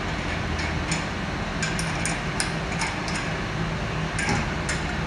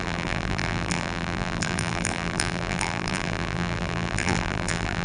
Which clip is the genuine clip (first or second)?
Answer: first